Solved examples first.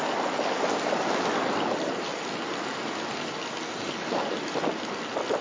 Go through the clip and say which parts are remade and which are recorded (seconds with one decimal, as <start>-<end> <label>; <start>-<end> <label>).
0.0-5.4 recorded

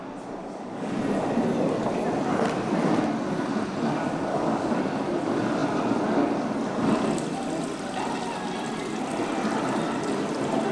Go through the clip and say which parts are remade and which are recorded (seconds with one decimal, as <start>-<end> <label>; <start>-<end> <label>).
0.0-0.4 recorded; 0.4-0.9 remade; 0.9-4.3 recorded; 4.3-4.8 remade; 4.8-10.7 recorded

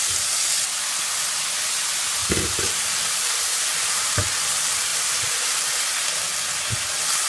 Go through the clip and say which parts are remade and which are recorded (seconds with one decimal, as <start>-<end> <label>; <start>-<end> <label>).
0.0-2.2 recorded; 2.2-4.3 remade; 4.3-4.9 recorded; 4.9-5.8 remade; 5.8-7.3 recorded

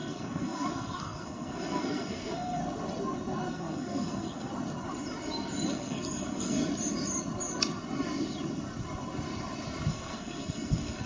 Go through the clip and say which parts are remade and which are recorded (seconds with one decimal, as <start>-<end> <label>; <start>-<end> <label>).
0.0-2.6 remade; 2.6-3.5 recorded; 3.5-4.5 remade; 4.5-5.7 recorded; 5.7-6.6 remade; 6.6-9.9 recorded; 9.9-11.1 remade

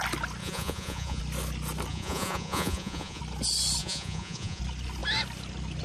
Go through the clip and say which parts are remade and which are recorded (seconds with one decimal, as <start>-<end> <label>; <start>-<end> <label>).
0.0-0.4 recorded; 0.4-1.2 remade; 1.2-1.9 recorded; 1.9-3.2 remade; 3.2-3.8 recorded; 3.8-4.6 remade; 4.6-5.8 recorded